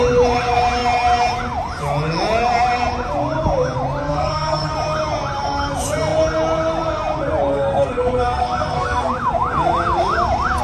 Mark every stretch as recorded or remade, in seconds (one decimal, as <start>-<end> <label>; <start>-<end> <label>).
0.0-4.0 recorded; 4.0-4.7 remade; 4.7-7.5 recorded; 7.5-9.1 remade; 9.1-10.6 recorded